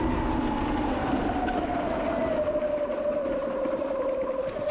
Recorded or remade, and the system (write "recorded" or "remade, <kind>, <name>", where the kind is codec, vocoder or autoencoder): recorded